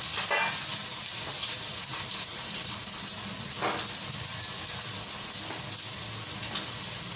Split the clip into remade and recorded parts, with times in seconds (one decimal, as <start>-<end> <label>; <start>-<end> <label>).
0.0-0.7 recorded; 0.7-3.1 remade; 3.1-7.2 recorded